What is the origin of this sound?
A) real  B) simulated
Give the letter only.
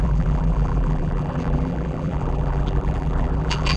B